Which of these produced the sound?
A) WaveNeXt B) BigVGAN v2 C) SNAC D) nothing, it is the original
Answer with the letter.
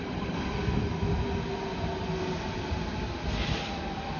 D